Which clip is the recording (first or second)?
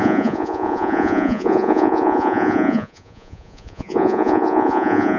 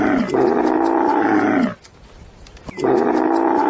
second